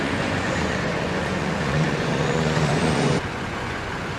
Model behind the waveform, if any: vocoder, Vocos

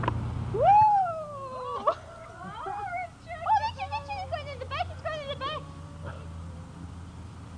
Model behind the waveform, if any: none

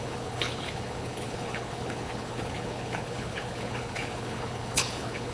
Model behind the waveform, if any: codec, HILCodec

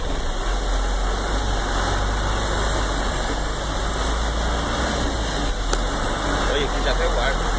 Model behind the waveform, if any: none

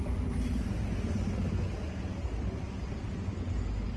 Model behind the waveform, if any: none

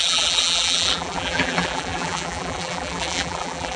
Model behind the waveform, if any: vocoder, BigVGAN v2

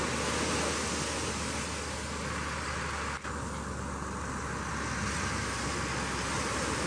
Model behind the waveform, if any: none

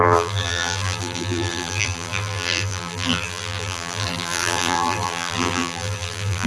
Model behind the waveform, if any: vocoder, BigVGAN v2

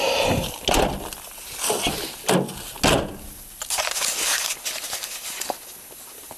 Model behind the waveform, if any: none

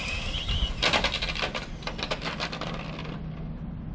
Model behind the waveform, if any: none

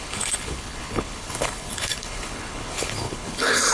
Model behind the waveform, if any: codec, HILCodec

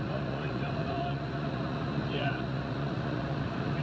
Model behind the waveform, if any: vocoder, Vocos